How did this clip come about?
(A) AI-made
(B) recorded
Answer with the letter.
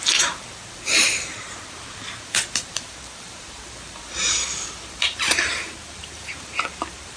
A